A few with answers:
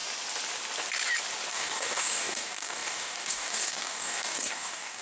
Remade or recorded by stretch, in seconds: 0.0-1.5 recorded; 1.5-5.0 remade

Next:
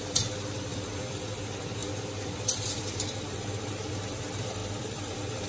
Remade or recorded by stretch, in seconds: 0.0-5.5 remade

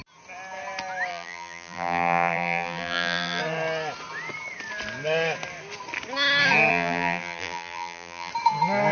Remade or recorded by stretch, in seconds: 0.0-1.1 recorded; 1.1-3.4 remade; 3.4-6.7 recorded; 6.7-8.3 remade; 8.3-8.9 recorded

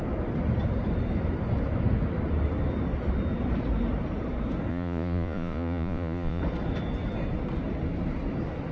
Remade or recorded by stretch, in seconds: 0.0-4.7 recorded; 4.7-6.4 remade; 6.4-8.7 recorded

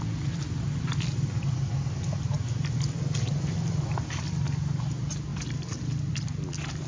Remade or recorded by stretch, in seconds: 0.0-6.9 recorded

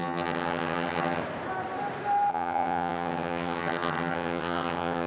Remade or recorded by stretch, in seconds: 0.0-1.2 remade; 1.2-2.3 recorded; 2.3-5.1 remade

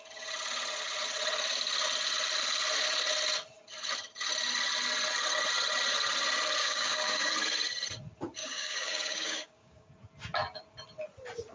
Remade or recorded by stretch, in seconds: 0.0-6.6 recorded; 6.6-7.3 remade; 7.3-8.4 recorded; 8.4-9.9 remade; 9.9-11.5 recorded